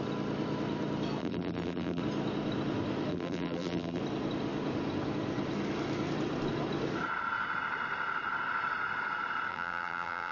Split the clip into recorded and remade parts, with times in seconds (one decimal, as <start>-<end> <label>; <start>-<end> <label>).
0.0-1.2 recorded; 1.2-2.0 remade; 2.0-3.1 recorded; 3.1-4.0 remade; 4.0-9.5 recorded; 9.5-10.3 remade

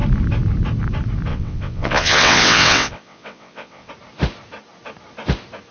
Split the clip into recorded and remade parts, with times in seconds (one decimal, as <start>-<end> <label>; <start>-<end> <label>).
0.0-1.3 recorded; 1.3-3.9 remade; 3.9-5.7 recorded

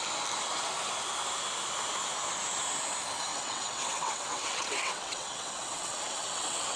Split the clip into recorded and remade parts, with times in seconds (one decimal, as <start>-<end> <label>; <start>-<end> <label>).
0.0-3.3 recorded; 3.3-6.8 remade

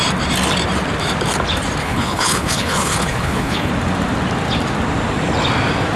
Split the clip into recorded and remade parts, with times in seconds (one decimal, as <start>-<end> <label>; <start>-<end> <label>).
0.0-1.8 recorded; 1.8-3.7 remade; 3.7-6.0 recorded